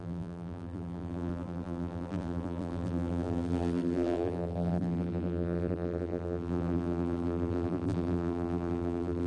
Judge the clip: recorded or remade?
remade